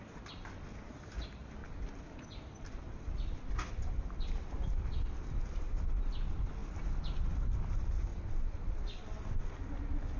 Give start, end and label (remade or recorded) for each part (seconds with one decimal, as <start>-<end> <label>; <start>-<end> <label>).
0.0-8.1 recorded; 8.1-9.1 remade; 9.1-10.2 recorded